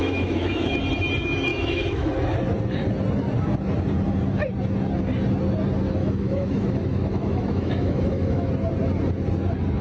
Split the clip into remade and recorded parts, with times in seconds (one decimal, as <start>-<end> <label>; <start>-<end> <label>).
0.0-0.7 remade; 0.7-1.5 recorded; 1.5-2.1 remade; 2.1-6.0 recorded; 6.0-8.5 remade; 8.5-9.8 recorded